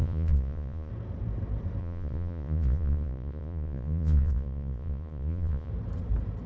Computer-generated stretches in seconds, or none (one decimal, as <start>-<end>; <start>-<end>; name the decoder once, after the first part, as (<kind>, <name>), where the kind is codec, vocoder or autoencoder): 0.0-0.9 (vocoder, Vocos); 1.8-5.7